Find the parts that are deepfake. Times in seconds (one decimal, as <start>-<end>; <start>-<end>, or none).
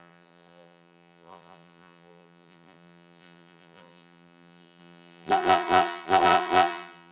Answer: 0.0-7.1